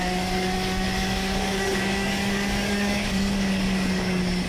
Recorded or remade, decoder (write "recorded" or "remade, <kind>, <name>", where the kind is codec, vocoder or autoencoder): remade, codec, DAC